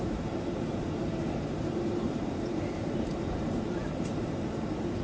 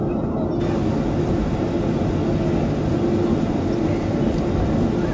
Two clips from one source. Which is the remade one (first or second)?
first